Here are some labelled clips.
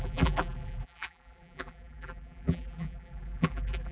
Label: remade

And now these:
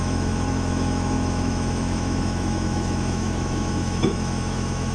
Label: remade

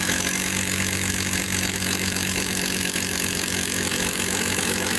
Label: remade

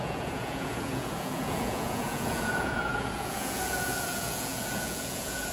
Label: remade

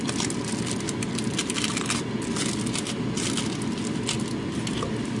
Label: recorded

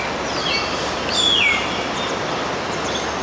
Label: recorded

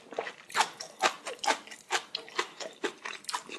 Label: recorded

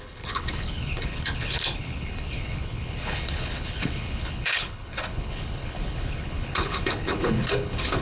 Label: remade